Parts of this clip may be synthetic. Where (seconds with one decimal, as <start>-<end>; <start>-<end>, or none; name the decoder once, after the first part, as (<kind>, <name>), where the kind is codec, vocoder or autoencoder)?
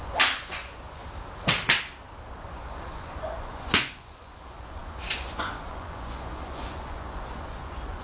0.0-1.0 (vocoder, Vocos); 2.4-8.0